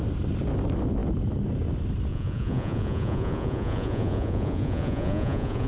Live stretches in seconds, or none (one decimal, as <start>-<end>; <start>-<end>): 0.0-2.1